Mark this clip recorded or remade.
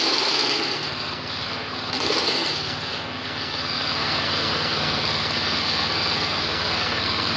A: remade